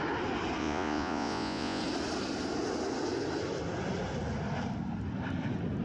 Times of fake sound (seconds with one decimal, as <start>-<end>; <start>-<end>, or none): 0.6-1.8